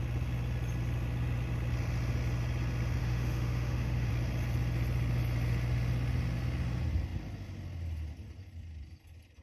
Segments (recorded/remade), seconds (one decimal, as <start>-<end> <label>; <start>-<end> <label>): 0.0-3.0 recorded; 3.0-4.1 remade; 4.1-9.4 recorded